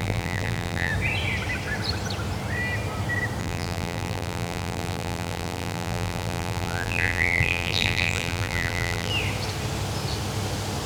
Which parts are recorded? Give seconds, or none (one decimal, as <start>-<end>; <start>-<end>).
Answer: 0.9-3.4; 9.1-10.9